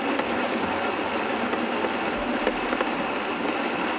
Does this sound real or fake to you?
real